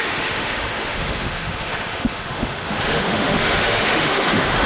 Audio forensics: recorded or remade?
remade